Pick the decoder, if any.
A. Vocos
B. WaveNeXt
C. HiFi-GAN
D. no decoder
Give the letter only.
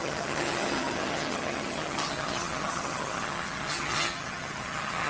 C